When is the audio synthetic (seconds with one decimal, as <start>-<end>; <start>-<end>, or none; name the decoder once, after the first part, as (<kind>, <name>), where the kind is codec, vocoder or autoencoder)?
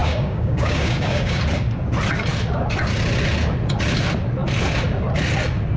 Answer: 0.0-1.4 (codec, DAC)